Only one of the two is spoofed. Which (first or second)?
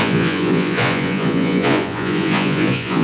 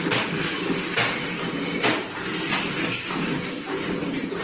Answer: first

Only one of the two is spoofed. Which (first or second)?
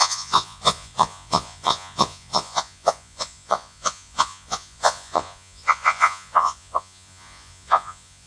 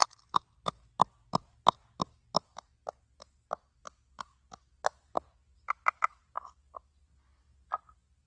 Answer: first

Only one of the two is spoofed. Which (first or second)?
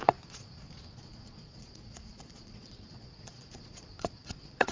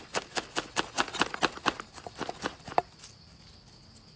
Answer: first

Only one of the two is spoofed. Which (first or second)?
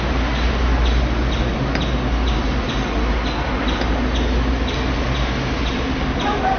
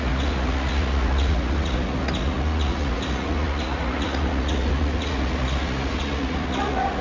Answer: second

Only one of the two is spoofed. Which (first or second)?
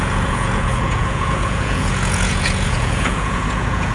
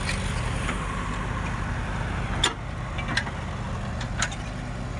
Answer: first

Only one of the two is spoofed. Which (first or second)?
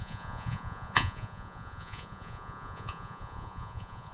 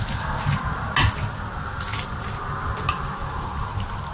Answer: first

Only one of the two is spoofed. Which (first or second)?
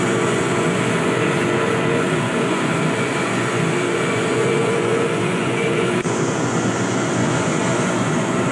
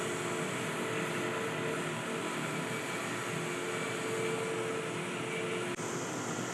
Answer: first